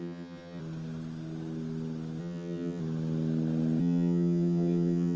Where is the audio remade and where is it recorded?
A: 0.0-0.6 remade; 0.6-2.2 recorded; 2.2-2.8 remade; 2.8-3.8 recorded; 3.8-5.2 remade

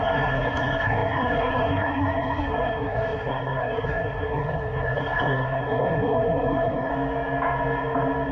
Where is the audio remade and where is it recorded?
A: 0.0-6.9 remade; 6.9-8.3 recorded

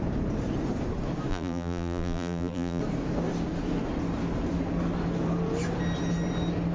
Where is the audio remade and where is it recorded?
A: 0.0-1.3 recorded; 1.3-2.8 remade; 2.8-6.7 recorded

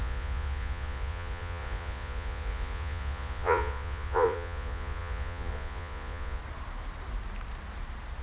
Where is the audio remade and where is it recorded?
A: 0.0-6.4 remade; 6.4-8.2 recorded

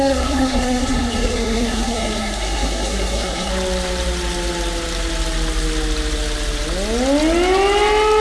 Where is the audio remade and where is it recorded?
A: 0.0-3.5 remade; 3.5-8.2 recorded

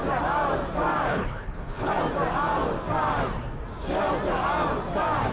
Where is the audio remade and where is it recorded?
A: 0.0-1.1 recorded; 1.1-1.9 remade; 1.9-5.3 recorded